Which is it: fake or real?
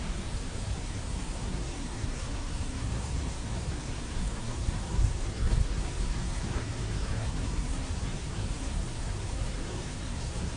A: fake